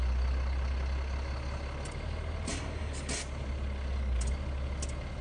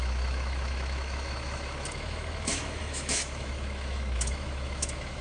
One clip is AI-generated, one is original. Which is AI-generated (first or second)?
second